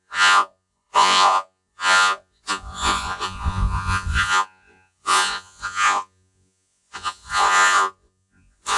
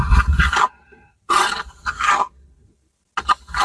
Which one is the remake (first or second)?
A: first